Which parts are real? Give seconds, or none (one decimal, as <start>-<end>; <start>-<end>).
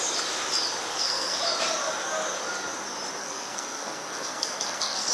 0.0-0.9; 1.4-3.2